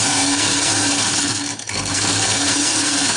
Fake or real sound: fake